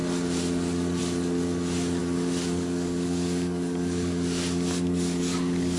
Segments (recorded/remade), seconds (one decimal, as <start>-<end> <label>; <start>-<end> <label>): 0.0-2.0 recorded; 2.0-5.8 remade